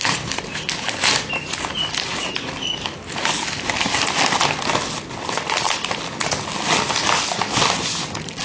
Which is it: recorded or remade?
recorded